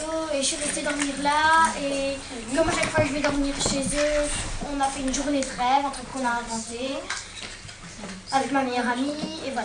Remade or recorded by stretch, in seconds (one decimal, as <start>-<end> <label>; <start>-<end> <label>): 0.0-6.1 recorded; 6.1-7.1 remade; 7.1-9.6 recorded